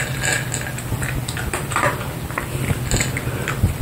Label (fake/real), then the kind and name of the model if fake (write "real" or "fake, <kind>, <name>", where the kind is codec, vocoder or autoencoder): real